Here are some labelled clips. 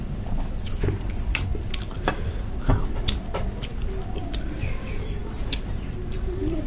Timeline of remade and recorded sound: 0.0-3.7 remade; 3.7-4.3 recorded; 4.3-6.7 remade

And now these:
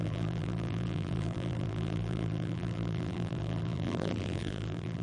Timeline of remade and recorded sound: 0.0-5.0 remade

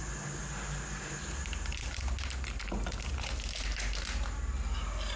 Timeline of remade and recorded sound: 0.0-5.2 recorded